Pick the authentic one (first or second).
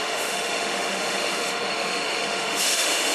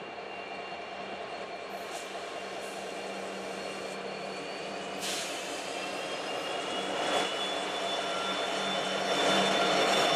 second